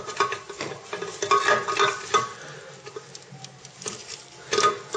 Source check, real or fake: real